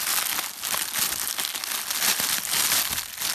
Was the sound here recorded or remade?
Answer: recorded